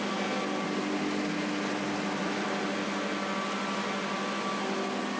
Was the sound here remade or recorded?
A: recorded